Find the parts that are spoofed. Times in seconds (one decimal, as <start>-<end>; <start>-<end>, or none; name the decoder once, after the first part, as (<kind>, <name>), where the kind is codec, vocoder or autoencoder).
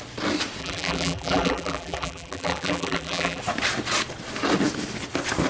0.6-3.4 (vocoder, BigVGAN v2)